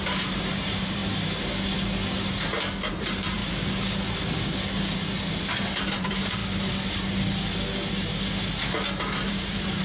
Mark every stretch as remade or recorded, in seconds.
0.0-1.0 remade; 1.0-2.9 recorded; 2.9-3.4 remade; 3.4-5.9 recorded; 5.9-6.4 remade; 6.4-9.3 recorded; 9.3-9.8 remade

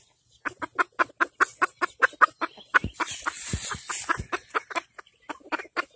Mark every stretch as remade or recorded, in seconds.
0.0-6.0 recorded

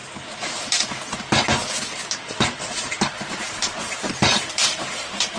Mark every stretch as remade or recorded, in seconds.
0.0-2.6 recorded; 2.6-5.4 remade

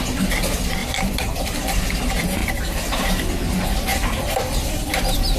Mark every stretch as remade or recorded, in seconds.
0.0-0.8 recorded; 0.8-1.8 remade; 1.8-2.4 recorded; 2.4-3.0 remade; 3.0-3.9 recorded; 3.9-5.0 remade; 5.0-5.4 recorded

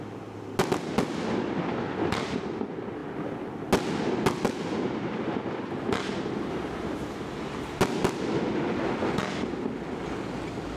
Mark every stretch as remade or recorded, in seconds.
0.0-10.8 recorded

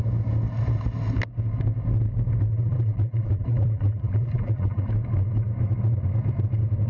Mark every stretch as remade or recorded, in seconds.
0.0-2.5 recorded; 2.5-4.9 remade; 4.9-6.9 recorded